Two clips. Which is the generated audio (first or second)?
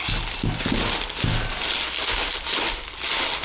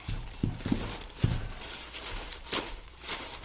second